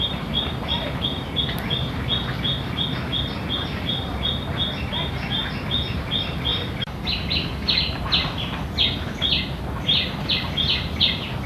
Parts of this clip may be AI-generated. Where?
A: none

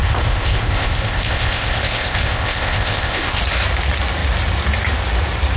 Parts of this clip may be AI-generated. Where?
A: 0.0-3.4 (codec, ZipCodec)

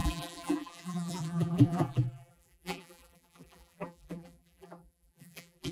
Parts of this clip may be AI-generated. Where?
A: 0.0-5.7 (vocoder, BigVGAN v2)

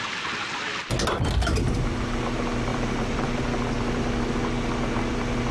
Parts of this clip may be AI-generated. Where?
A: 2.7-3.4 (vocoder, BigVGAN v2)